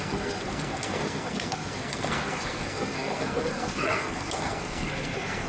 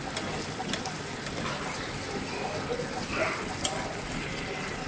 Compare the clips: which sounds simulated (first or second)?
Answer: first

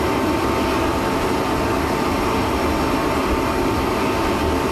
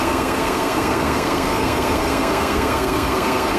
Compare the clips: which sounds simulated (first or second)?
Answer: second